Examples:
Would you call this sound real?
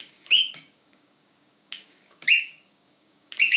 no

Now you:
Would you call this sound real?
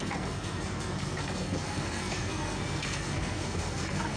no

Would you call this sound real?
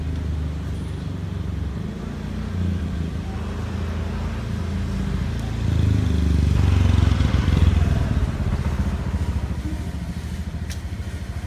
yes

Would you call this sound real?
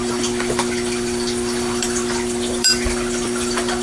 no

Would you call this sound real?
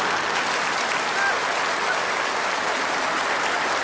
yes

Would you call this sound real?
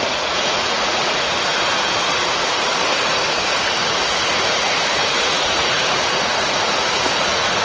no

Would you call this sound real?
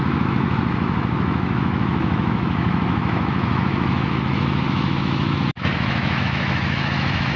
no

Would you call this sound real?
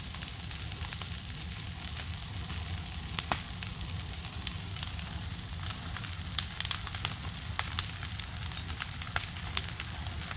yes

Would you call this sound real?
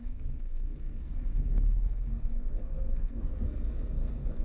no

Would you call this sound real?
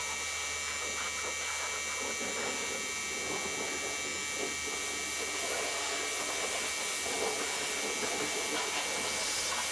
yes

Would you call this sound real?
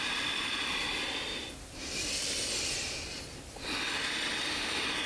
no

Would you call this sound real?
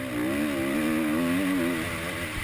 yes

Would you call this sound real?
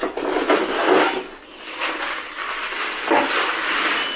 yes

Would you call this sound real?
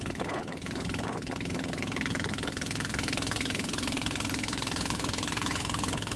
no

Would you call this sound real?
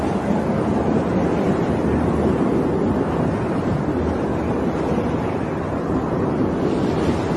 yes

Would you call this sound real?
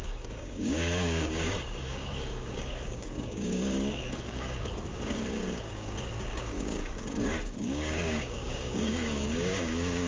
no